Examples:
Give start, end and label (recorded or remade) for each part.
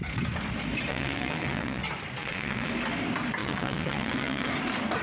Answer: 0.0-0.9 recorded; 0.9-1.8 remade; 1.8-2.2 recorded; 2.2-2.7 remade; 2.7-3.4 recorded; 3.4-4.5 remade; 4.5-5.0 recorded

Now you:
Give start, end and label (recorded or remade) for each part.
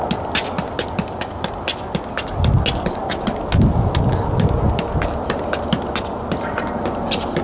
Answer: 0.0-7.4 recorded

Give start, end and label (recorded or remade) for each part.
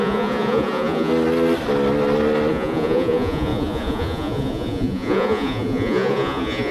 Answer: 0.0-1.1 remade; 1.1-2.5 recorded; 2.5-6.7 remade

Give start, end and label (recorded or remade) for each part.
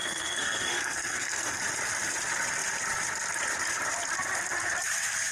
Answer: 0.0-1.6 remade; 1.6-5.3 recorded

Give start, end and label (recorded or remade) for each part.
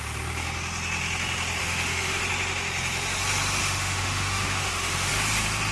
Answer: 0.0-1.6 recorded; 1.6-2.2 remade; 2.2-3.6 recorded; 3.6-5.1 remade; 5.1-5.7 recorded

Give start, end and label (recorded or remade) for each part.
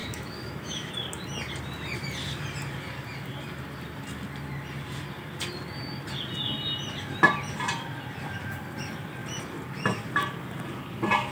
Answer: 0.0-0.9 remade; 0.9-11.3 recorded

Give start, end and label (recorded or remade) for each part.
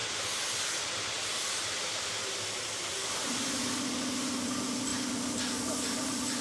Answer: 0.0-6.4 remade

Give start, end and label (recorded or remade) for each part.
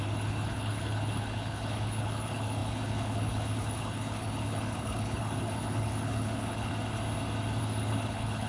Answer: 0.0-6.7 remade; 6.7-7.6 recorded; 7.6-8.5 remade